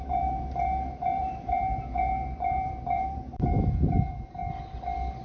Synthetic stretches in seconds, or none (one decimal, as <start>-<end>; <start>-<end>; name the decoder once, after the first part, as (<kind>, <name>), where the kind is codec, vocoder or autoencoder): 0.0-4.4 (vocoder, BigVGAN v2)